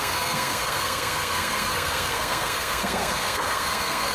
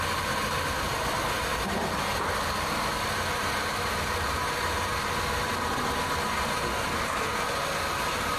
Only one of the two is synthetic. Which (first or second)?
first